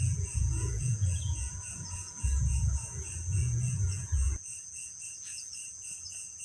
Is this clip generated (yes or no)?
yes